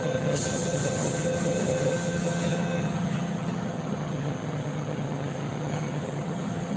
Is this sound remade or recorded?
remade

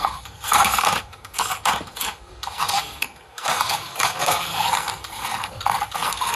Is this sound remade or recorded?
remade